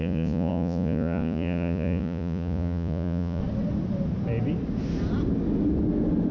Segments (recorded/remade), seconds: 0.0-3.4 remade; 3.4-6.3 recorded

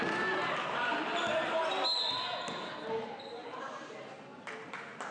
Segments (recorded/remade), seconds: 0.0-5.1 recorded

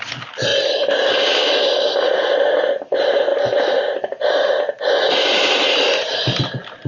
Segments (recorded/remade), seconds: 0.0-6.9 recorded

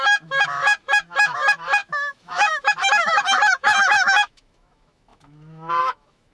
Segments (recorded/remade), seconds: 0.0-6.3 remade

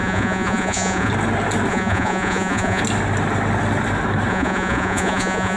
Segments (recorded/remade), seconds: 0.0-1.1 remade; 1.1-1.7 recorded; 1.7-2.8 remade; 2.8-4.3 recorded; 4.3-5.6 remade

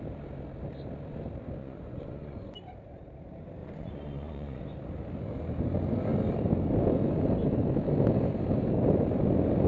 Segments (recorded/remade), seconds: 0.0-1.6 recorded; 1.6-2.5 remade; 2.5-3.6 recorded; 3.6-4.6 remade; 4.6-9.7 recorded